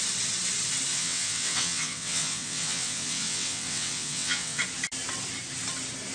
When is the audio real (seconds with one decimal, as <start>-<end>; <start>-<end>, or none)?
0.0-0.9; 4.6-6.1